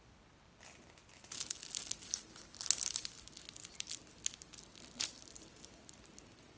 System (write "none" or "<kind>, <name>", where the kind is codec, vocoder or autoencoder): none